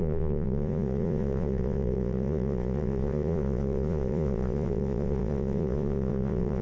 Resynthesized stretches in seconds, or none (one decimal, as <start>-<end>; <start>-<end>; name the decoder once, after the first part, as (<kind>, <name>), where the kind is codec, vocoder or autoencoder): 0.0-6.6 (vocoder, Vocos)

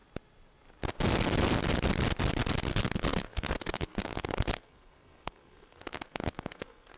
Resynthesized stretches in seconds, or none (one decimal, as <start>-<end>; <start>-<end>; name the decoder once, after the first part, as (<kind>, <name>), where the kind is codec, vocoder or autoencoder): 2.7-7.0 (codec, SNAC)

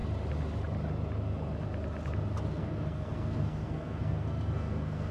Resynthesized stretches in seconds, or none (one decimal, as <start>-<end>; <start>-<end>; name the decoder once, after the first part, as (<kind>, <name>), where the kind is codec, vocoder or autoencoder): 2.5-5.1 (codec, SNAC)

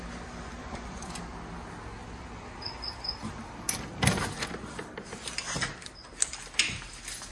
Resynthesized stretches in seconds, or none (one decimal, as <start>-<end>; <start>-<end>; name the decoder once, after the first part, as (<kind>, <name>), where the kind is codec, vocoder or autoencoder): 0.6-1.2 (vocoder, Vocos)

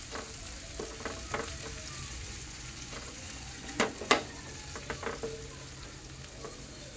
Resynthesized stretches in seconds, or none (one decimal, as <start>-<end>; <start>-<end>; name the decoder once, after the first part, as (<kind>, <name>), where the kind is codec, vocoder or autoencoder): 2.1-4.5 (vocoder, Vocos)

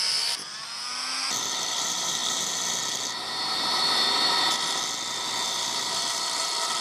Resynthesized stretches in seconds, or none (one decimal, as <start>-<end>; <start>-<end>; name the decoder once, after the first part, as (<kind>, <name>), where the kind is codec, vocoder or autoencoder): 0.0-2.2 (vocoder, BigVGAN v2); 5.6-6.8